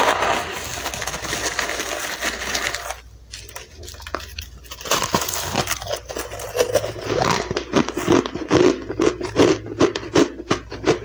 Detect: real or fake real